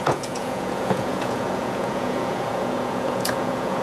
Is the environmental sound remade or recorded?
remade